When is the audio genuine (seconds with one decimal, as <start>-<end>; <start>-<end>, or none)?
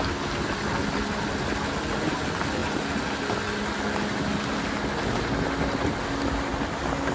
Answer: 0.0-7.1